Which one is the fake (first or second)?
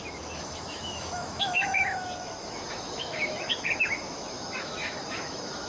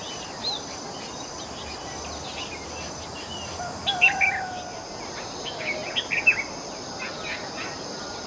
first